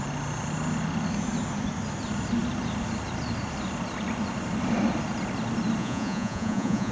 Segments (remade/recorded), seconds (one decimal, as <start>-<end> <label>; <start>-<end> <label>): 0.0-5.8 recorded; 5.8-6.9 remade